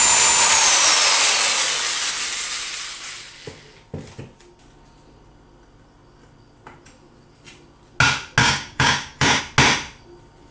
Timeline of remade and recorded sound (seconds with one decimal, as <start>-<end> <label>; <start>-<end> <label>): 0.0-8.4 recorded; 8.4-9.4 remade; 9.4-10.5 recorded